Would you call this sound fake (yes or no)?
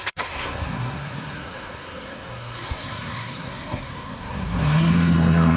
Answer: yes